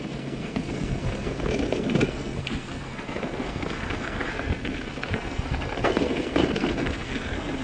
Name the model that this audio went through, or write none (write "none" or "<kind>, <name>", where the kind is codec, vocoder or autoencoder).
codec, SNAC